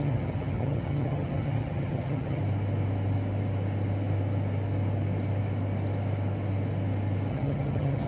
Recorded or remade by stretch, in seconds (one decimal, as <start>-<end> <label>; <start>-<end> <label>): 0.0-2.4 remade; 2.4-7.3 recorded; 7.3-8.1 remade